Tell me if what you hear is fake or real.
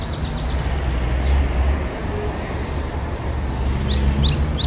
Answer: real